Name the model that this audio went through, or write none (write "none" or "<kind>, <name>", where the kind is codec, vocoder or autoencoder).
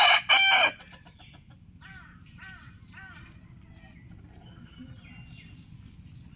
none